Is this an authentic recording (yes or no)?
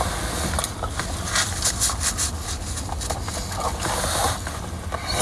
yes